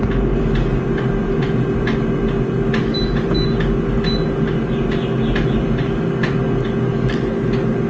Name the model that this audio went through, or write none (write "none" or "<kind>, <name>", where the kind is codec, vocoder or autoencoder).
none